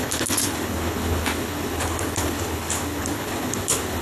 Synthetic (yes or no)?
yes